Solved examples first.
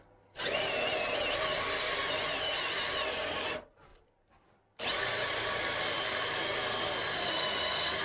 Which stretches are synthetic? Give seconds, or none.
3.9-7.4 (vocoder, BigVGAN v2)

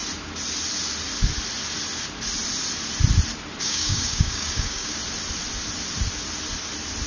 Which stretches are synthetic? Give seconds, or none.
3.6-5.0 (codec, DAC)

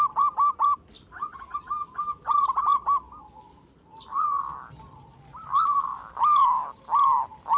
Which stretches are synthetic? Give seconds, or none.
5.9-6.8 (vocoder, BigVGAN v2)

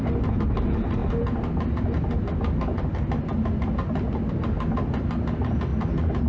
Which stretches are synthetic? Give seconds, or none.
none

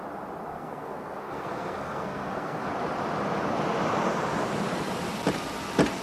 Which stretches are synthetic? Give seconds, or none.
0.5-2.7 (codec, SNAC)